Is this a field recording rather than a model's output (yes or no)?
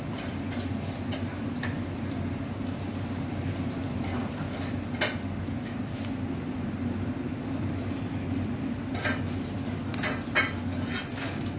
yes